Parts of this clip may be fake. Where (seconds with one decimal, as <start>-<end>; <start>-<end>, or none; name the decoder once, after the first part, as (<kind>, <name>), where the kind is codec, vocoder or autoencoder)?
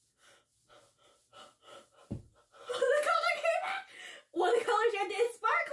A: none